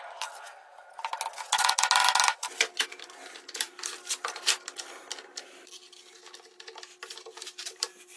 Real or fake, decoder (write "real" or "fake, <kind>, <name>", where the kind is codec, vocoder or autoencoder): real